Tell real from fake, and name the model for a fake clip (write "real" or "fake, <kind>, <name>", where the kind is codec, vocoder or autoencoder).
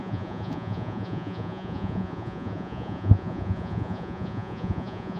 fake, vocoder, Vocos